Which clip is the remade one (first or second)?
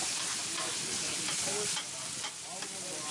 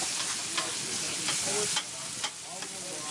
first